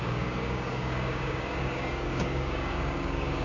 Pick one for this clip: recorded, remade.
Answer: remade